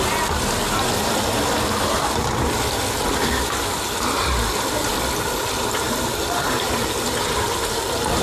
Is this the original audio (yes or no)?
yes